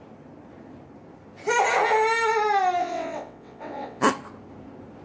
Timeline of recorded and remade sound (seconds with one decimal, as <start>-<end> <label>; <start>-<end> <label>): 0.0-2.8 recorded; 2.8-4.0 remade; 4.0-5.0 recorded